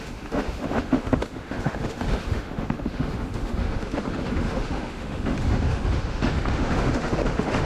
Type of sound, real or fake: fake